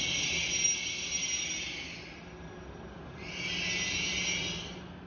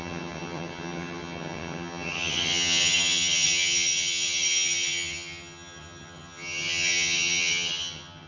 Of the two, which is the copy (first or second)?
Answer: second